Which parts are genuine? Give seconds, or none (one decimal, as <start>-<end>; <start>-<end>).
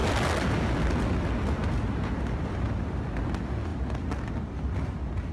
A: 0.0-5.3